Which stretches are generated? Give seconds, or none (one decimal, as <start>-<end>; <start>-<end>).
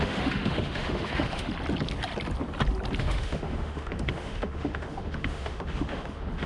0.0-1.5; 3.0-6.5